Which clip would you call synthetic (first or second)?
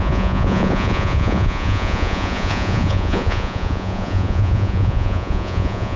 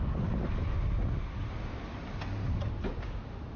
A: first